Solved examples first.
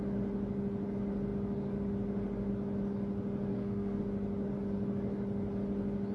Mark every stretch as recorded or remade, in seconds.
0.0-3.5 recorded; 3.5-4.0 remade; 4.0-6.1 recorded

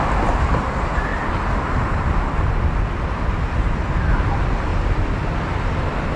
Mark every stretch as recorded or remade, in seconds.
0.0-6.2 recorded

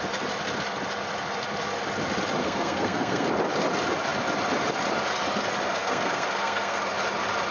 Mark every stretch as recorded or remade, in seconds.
0.0-2.4 recorded; 2.4-3.3 remade; 3.3-5.7 recorded; 5.7-6.8 remade; 6.8-7.5 recorded

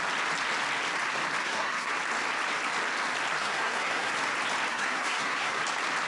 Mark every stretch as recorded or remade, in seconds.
0.0-1.4 recorded; 1.4-1.9 remade; 1.9-3.4 recorded; 3.4-4.1 remade; 4.1-4.7 recorded; 4.7-5.6 remade; 5.6-6.1 recorded